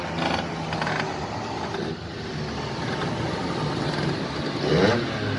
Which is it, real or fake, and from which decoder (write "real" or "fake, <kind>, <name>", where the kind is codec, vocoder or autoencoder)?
real